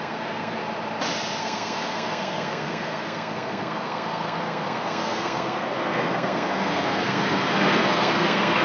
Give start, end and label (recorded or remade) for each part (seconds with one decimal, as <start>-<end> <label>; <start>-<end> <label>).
0.0-0.6 remade; 0.6-1.4 recorded; 1.4-8.6 remade